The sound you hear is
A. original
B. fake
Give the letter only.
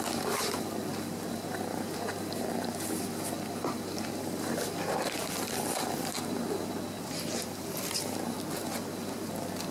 A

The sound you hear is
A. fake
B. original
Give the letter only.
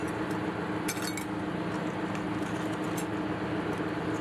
B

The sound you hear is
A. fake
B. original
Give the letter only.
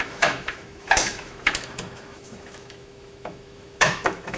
A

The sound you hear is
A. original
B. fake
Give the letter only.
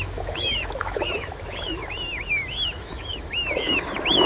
B